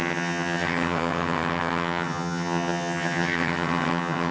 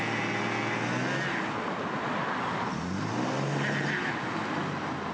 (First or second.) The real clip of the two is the second